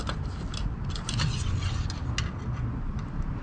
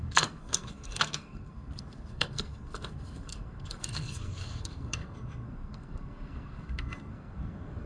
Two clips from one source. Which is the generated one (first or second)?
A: second